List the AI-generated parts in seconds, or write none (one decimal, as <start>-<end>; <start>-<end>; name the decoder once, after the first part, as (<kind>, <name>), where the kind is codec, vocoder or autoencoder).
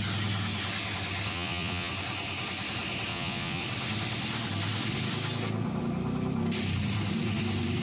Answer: 1.3-1.9 (vocoder, Vocos); 3.1-3.6